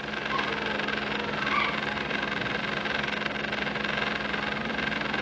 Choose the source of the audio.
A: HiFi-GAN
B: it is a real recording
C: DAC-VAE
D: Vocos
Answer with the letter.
B